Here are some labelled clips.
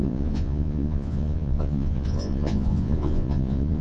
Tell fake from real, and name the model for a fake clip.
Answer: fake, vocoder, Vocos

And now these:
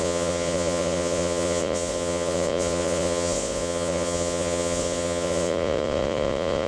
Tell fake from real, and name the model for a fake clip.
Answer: fake, vocoder, Vocos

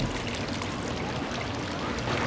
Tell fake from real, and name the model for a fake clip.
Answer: real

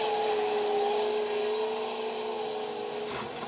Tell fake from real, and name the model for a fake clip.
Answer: real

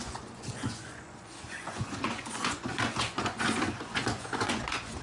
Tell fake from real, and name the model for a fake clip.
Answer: fake, vocoder, Vocos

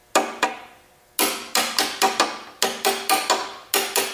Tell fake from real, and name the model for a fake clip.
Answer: real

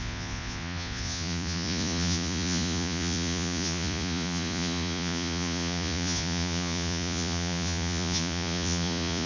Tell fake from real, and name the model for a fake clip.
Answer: fake, vocoder, Vocos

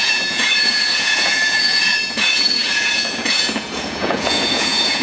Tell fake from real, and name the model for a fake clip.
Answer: fake, vocoder, Vocos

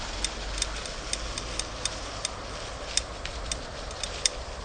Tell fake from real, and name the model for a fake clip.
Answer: real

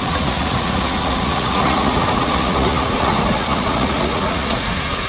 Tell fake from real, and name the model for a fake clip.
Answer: fake, vocoder, Vocos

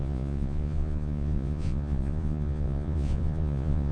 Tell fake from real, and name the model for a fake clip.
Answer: fake, vocoder, Vocos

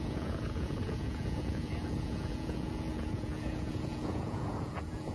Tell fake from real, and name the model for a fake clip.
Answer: fake, vocoder, Vocos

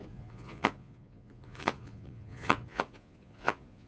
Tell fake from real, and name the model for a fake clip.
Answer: fake, vocoder, Vocos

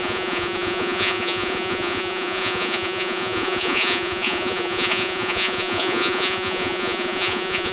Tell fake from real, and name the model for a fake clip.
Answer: fake, vocoder, Vocos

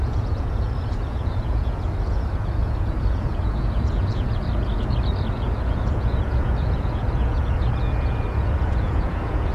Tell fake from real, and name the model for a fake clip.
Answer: fake, vocoder, Vocos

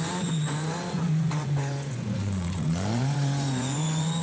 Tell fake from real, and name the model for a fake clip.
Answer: fake, vocoder, Vocos